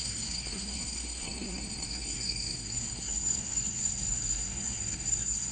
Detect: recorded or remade remade